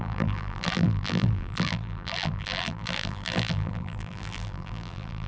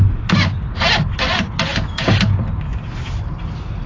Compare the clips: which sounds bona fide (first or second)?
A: second